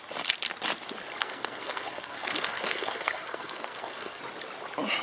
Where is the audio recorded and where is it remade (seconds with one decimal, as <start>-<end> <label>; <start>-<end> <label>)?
0.0-1.2 recorded; 1.2-4.2 remade; 4.2-5.0 recorded